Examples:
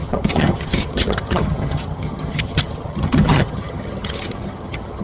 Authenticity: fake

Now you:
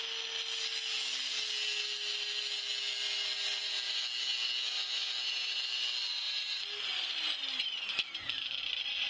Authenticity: real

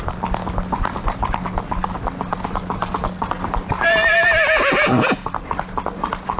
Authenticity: real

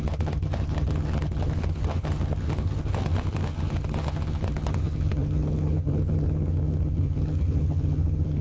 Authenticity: fake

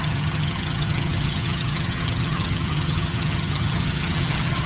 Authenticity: fake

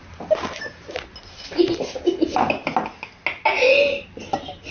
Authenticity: real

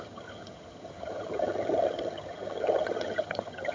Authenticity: fake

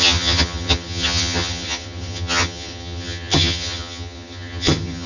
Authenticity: fake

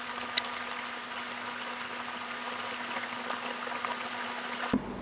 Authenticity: real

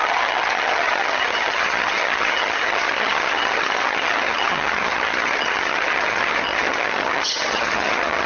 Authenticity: fake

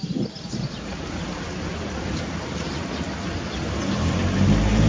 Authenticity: real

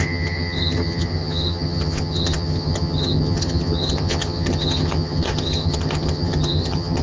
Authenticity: fake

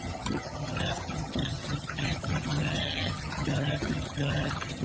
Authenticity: fake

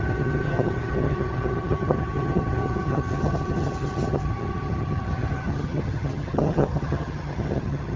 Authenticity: fake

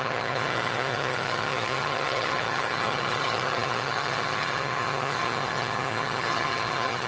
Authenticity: fake